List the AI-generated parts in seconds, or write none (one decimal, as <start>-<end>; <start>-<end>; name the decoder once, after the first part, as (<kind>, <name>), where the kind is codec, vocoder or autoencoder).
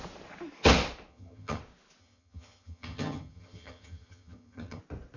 1.1-1.6 (vocoder, HiFi-GAN); 2.0-4.8